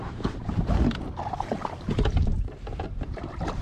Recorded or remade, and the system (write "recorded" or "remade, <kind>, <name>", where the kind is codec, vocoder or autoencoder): remade, vocoder, BigVGAN v2